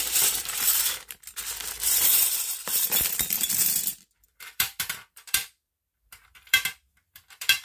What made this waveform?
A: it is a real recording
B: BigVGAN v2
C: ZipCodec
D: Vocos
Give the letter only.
B